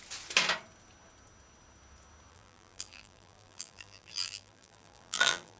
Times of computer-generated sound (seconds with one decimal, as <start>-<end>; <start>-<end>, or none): 2.3-5.6